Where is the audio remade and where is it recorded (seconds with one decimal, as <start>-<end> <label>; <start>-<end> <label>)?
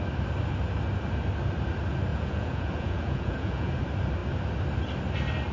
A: 0.0-2.1 recorded; 2.1-3.8 remade; 3.8-5.5 recorded